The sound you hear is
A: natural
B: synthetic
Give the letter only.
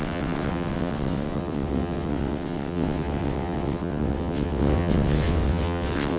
B